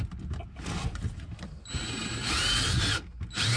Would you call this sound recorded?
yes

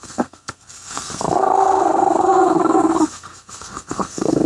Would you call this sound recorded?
no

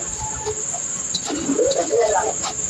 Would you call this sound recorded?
yes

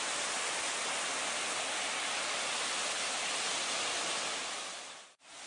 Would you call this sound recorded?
yes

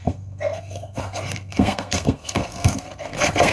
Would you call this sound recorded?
no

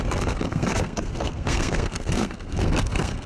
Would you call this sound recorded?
no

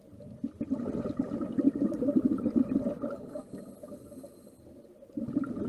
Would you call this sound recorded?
yes